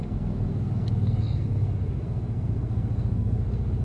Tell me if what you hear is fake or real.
fake